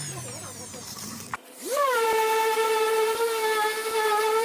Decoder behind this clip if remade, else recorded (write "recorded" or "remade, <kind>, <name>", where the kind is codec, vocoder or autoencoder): remade, vocoder, BigVGAN v2